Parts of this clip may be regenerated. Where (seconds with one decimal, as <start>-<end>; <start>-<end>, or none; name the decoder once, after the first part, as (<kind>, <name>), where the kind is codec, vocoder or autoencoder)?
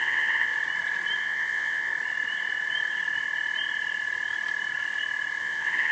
0.0-0.5 (vocoder, WaveNeXt); 1.2-1.9; 5.4-5.9